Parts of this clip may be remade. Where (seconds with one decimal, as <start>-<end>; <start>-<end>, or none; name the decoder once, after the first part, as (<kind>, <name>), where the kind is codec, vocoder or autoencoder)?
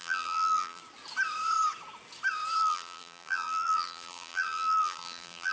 0.0-0.8 (vocoder, BigVGAN v2); 2.6-5.5